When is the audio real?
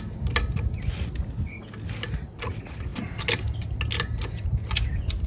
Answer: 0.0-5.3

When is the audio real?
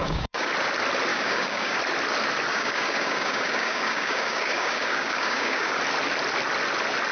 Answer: 0.5-1.1; 1.8-2.5; 5.8-7.1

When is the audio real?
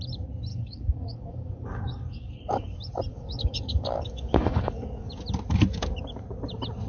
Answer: 0.0-0.5; 2.7-3.1; 5.1-6.9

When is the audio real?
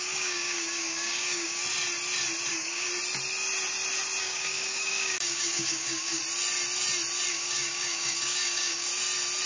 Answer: 1.6-2.5; 2.9-4.2; 6.2-7.3; 8.9-9.5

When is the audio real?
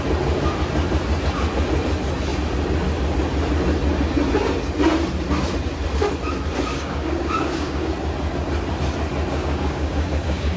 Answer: 0.0-6.7; 7.9-9.3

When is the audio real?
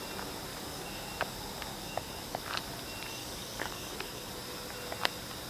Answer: 0.0-0.5; 1.1-1.7; 2.4-3.2; 4.3-5.5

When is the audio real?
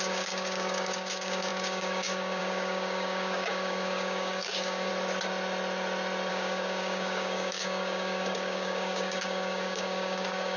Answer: 4.9-6.3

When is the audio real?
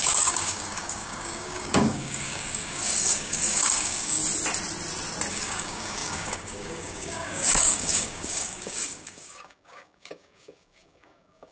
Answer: 4.2-5.3